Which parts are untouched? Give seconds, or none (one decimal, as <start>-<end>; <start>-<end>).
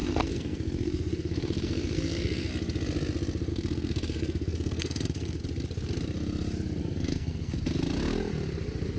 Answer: 2.5-3.5; 5.4-6.8; 7.6-9.0